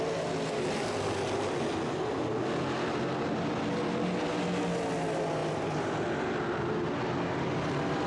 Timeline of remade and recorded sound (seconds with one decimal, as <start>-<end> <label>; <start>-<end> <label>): 0.0-8.1 recorded